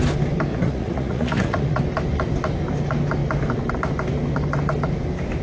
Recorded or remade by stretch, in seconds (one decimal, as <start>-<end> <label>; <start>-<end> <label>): 0.0-0.5 recorded; 0.5-1.8 remade; 1.8-5.4 recorded